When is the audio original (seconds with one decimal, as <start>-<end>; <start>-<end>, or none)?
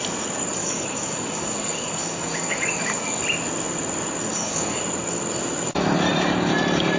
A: 0.0-0.6; 3.2-4.3; 4.8-7.0